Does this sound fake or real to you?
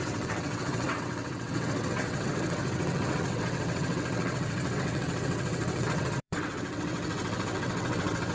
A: fake